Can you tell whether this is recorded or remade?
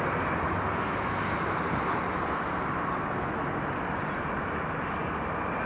recorded